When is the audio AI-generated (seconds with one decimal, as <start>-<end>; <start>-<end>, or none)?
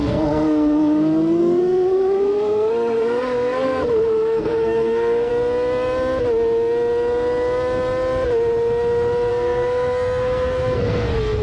0.0-5.3; 9.3-11.4